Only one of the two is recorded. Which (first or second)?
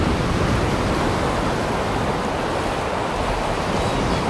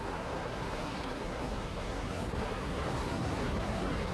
first